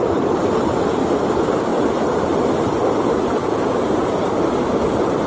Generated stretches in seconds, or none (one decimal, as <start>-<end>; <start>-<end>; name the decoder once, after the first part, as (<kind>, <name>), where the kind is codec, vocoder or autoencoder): 3.4-4.2 (vocoder, Vocos)

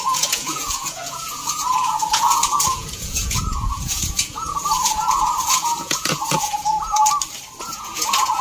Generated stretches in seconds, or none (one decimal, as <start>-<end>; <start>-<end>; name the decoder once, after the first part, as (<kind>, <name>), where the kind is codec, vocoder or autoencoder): 0.0-7.0 (vocoder, Vocos); 7.6-8.4

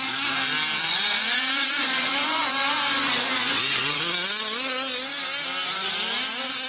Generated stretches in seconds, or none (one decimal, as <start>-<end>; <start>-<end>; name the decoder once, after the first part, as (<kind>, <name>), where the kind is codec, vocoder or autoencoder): 0.9-4.0 (vocoder, Vocos)